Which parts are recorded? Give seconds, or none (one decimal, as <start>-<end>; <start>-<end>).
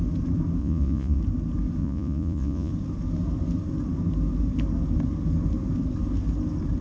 0.0-0.6; 1.2-1.8; 2.7-6.8